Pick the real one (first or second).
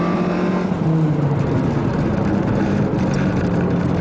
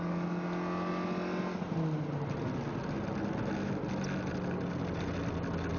second